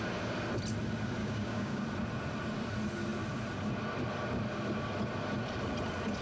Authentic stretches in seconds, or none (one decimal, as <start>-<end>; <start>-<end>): 0.0-1.2; 1.8-6.2